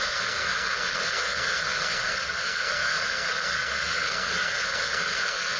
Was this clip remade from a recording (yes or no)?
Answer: yes